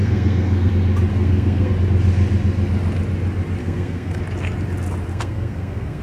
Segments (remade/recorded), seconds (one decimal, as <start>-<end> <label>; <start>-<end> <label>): 0.0-0.7 remade; 0.7-1.1 recorded; 1.1-1.7 remade; 1.7-3.6 recorded; 3.6-4.2 remade; 4.2-5.1 recorded; 5.1-6.0 remade